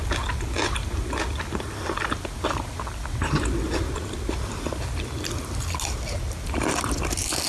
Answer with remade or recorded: recorded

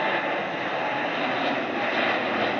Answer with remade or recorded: recorded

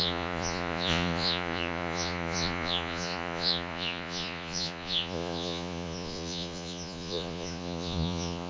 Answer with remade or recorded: remade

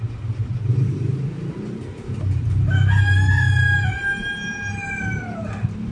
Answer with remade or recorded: recorded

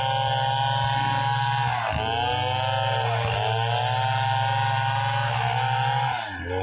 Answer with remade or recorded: recorded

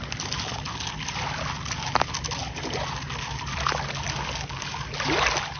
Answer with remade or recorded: recorded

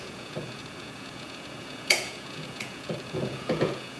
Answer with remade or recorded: remade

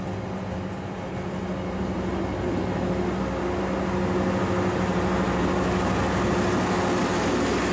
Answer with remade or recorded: recorded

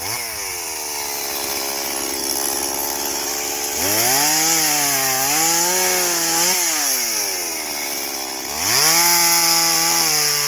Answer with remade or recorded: recorded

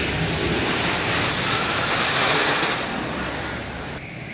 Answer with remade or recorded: recorded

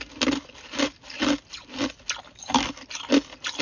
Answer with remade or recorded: recorded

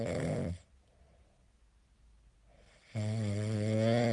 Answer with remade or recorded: recorded